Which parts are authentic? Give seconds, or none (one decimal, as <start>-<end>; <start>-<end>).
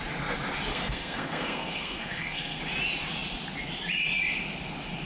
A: 0.0-0.7; 2.6-5.1